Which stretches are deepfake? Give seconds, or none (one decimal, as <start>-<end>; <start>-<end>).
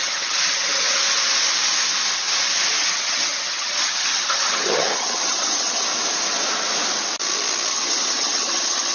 0.0-1.0; 2.8-5.9; 7.7-8.9